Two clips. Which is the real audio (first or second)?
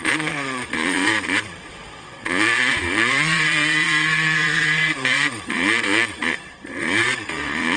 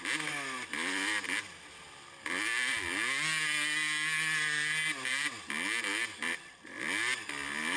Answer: second